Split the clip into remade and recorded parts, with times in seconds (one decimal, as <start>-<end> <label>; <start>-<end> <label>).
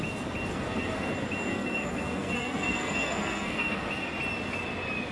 0.0-0.5 recorded; 0.5-1.1 remade; 1.1-1.5 recorded; 1.5-4.1 remade; 4.1-5.1 recorded